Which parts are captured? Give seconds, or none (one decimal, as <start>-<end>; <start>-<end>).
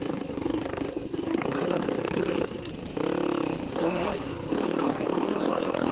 2.7-3.7